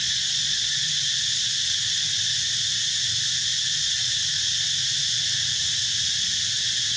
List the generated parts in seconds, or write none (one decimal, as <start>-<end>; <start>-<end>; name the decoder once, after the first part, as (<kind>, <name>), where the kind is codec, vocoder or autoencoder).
0.0-0.9 (vocoder, Vocos)